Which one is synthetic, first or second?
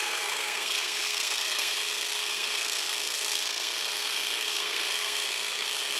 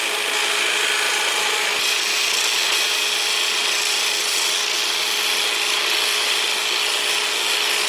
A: first